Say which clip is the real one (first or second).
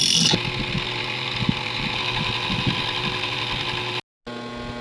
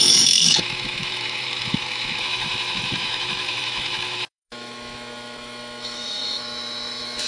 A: first